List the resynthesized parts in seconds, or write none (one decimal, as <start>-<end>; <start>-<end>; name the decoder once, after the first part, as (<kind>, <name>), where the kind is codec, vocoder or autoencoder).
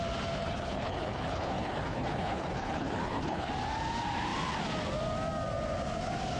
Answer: 0.4-3.5 (codec, HILCodec)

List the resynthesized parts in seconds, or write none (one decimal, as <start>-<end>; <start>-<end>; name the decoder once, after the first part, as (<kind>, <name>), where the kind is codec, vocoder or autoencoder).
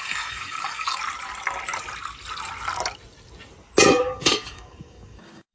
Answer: 0.0-1.0 (codec, DAC); 4.0-5.5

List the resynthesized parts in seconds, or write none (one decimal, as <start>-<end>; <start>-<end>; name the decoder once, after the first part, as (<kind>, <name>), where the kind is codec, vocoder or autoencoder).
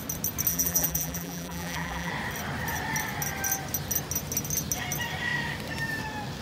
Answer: 0.5-2.1 (vocoder, BigVGAN v2)